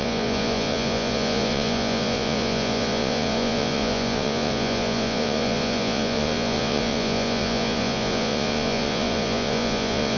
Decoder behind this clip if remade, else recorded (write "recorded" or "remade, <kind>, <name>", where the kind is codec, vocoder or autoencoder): remade, vocoder, Vocos